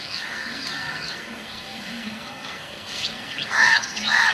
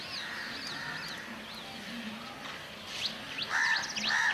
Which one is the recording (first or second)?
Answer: second